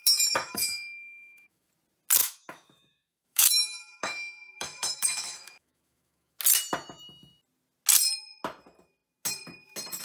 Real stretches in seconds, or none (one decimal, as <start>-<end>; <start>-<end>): 1.7-2.2; 6.4-10.0